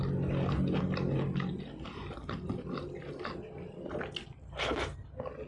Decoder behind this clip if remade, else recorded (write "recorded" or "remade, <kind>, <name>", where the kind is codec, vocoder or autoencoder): recorded